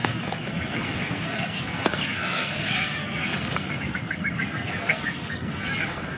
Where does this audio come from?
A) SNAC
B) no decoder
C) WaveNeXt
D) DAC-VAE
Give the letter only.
A